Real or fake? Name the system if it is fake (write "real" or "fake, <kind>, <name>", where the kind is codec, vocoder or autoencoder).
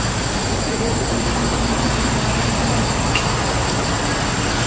real